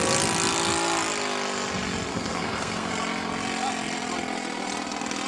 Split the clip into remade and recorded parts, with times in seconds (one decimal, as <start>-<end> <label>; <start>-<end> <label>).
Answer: 0.0-2.1 recorded; 2.1-2.9 remade; 2.9-5.3 recorded